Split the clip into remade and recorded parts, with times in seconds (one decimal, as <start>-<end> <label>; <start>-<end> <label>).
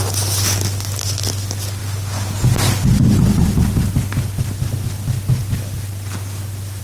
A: 0.0-1.8 recorded; 1.8-3.0 remade; 3.0-5.4 recorded; 5.4-6.8 remade